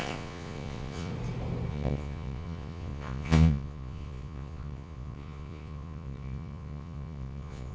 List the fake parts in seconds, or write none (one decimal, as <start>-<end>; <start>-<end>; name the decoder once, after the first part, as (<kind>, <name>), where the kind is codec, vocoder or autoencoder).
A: 0.0-1.1 (vocoder, Vocos); 1.7-7.7